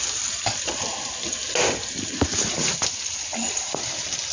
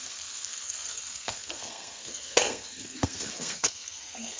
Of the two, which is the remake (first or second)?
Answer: second